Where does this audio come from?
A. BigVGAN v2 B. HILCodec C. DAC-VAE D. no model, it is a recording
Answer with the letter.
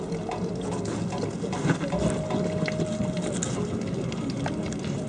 D